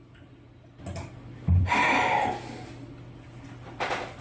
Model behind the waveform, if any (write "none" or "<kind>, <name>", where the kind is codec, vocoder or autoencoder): none